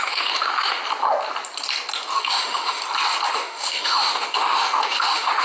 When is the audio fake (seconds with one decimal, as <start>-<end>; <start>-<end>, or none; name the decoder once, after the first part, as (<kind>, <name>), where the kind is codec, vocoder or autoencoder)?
0.0-0.8 (autoencoder, DAC-VAE); 2.2-2.8; 3.3-5.4